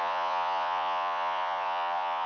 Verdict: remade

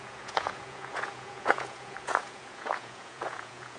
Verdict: remade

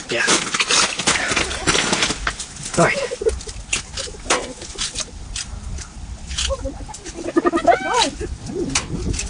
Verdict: remade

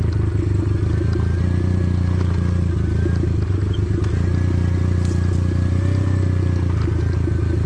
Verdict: recorded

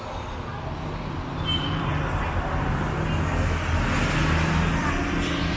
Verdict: recorded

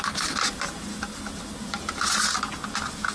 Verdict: recorded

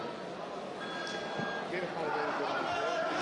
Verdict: recorded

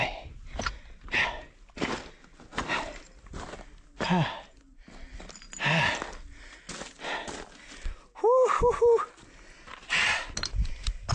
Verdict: recorded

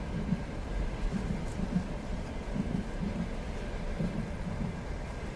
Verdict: recorded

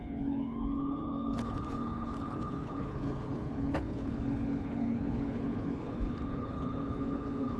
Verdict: remade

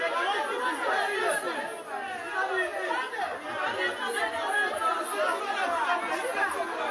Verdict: recorded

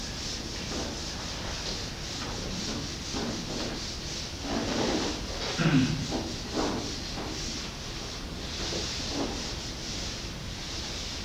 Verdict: recorded